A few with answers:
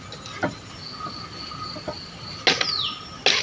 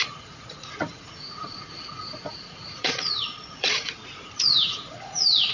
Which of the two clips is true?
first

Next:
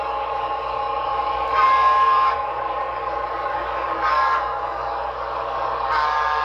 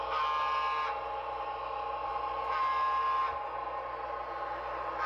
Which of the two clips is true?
second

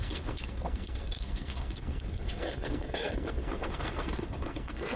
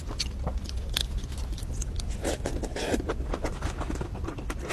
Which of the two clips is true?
second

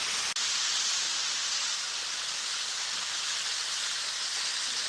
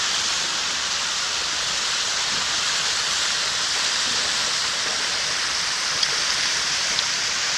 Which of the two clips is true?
first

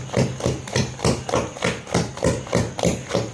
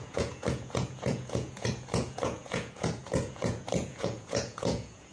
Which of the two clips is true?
first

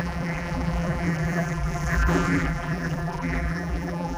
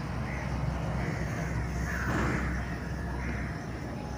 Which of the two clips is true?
second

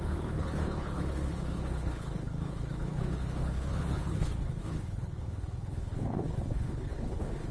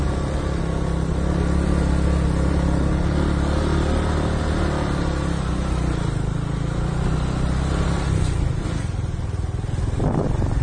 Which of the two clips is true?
second